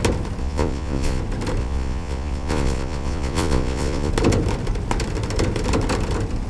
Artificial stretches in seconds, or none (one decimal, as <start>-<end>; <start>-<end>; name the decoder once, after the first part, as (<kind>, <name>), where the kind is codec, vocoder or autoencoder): 0.4-1.2 (vocoder, Vocos); 1.6-4.1